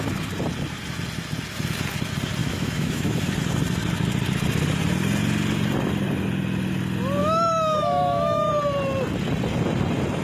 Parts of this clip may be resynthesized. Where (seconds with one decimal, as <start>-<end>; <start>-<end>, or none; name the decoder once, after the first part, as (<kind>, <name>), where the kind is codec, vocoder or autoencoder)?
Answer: 2.4-3.2 (autoencoder, DAC-VAE); 7.2-8.5